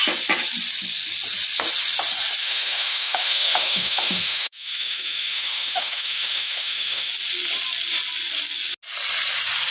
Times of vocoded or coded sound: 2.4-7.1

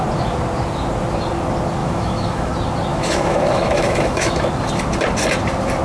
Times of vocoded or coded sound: 1.8-2.5; 2.9-4.5

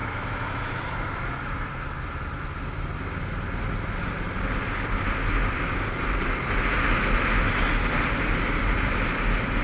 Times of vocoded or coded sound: 0.0-0.7

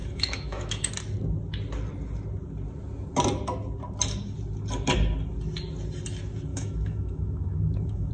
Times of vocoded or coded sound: 0.0-0.9; 6.5-8.1

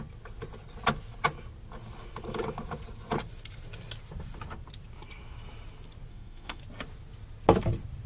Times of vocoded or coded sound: 6.1-6.6

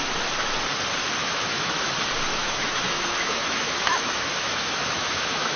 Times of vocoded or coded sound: 1.2-1.9; 2.3-5.6

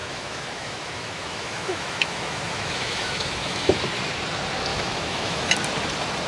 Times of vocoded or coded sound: 0.0-3.8; 4.7-5.5

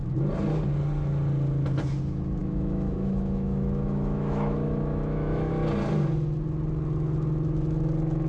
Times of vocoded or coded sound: 2.4-5.5